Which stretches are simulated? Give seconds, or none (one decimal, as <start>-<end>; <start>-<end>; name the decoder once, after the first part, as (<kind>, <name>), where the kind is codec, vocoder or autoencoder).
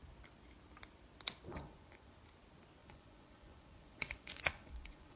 1.5-2.1 (vocoder, Vocos); 2.8-5.2